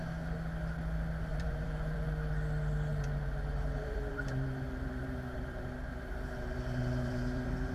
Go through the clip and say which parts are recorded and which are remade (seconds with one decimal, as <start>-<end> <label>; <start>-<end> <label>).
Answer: 0.0-1.3 recorded; 1.3-2.1 remade; 2.1-2.9 recorded; 2.9-7.7 remade